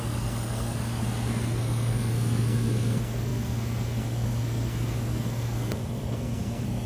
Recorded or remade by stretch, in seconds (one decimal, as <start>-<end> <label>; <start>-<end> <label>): 0.0-6.9 remade